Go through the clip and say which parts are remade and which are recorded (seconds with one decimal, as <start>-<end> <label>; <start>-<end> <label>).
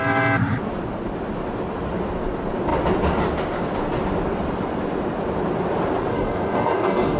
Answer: 0.0-6.1 recorded; 6.1-7.2 remade